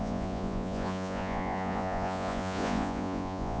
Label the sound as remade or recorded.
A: remade